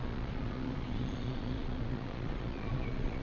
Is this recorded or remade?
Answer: remade